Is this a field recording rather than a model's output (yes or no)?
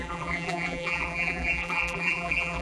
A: no